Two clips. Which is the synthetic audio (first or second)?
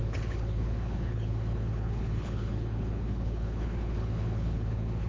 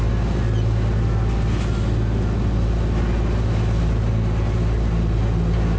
first